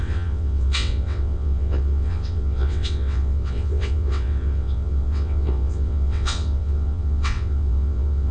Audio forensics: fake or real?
fake